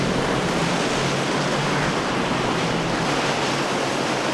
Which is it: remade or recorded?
recorded